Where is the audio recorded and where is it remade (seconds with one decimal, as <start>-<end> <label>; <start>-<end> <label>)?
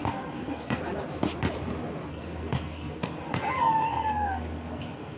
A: 0.0-0.8 remade; 0.8-2.1 recorded; 2.1-5.2 remade